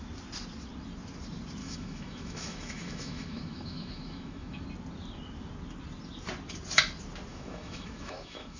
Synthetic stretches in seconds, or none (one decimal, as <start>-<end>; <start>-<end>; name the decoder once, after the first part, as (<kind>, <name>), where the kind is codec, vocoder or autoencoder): 1.6-4.6 (autoencoder, DAC-VAE); 7.3-8.6